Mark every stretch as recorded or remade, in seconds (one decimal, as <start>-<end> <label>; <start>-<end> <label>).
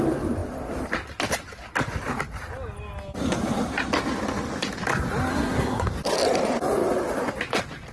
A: 0.0-5.3 recorded; 5.3-5.9 remade; 5.9-7.9 recorded